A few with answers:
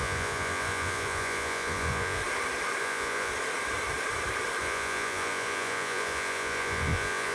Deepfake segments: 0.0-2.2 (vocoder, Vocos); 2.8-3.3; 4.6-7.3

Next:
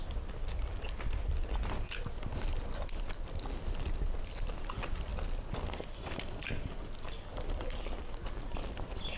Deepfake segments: none

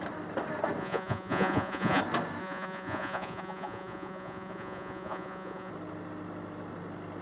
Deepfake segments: 0.8-2.0 (vocoder, Vocos); 2.4-5.7